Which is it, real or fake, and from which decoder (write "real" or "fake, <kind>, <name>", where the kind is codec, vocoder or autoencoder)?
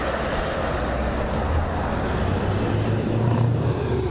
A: real